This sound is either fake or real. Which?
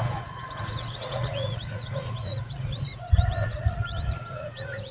fake